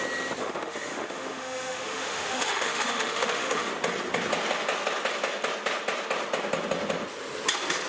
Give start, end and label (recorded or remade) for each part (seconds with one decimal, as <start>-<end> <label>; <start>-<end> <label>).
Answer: 0.0-0.4 recorded; 0.4-3.7 remade; 3.7-7.9 recorded